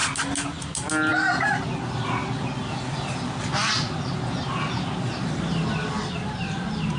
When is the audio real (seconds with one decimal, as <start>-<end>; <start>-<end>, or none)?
0.0-7.0